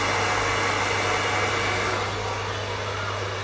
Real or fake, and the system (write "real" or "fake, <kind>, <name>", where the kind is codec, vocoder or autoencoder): real